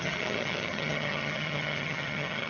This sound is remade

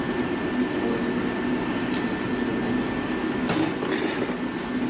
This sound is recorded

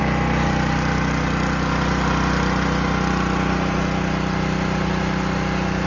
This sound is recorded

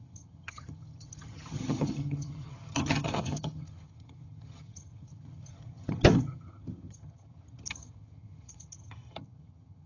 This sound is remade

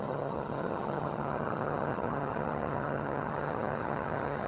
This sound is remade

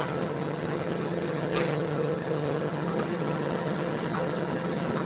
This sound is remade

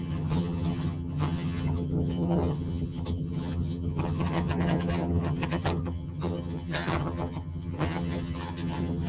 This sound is remade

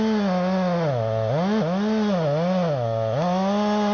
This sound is recorded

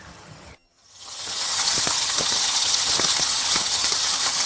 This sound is remade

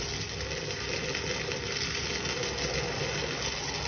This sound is recorded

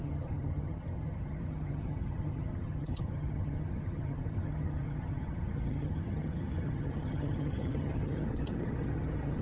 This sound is remade